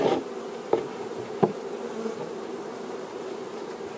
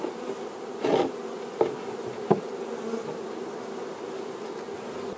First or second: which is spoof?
first